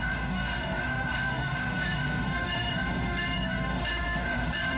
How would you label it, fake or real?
fake